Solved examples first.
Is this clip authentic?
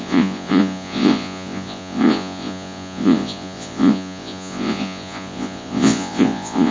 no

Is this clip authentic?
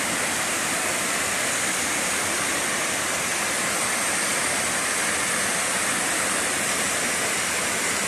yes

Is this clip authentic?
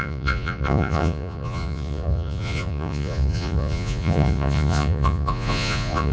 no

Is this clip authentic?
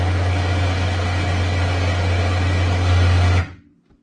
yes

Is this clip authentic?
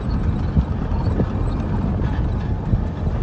yes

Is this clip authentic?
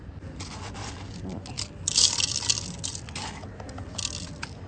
yes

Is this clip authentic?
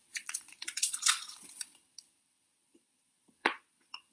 no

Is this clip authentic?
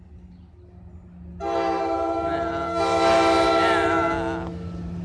yes